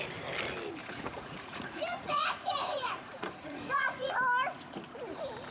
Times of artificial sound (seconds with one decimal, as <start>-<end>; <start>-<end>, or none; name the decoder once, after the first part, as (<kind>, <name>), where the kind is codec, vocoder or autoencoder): 0.8-4.1 (vocoder, Vocos)